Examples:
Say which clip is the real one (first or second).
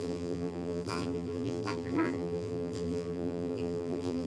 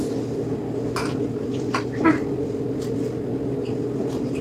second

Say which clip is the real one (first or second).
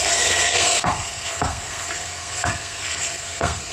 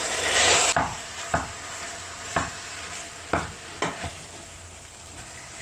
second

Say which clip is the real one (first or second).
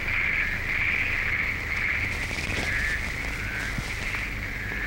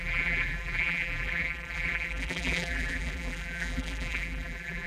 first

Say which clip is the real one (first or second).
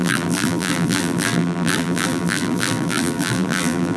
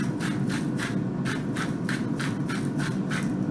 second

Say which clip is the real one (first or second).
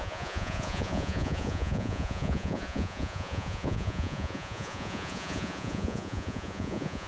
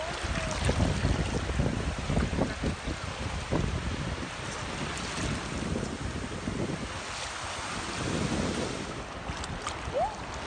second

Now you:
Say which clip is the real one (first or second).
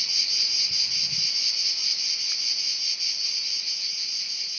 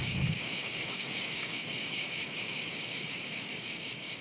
first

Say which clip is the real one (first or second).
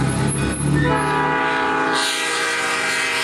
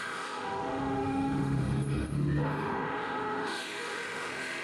first